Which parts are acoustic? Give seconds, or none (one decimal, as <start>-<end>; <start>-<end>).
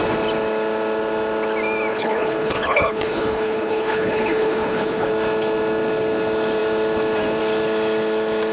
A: 0.0-1.9; 5.1-8.5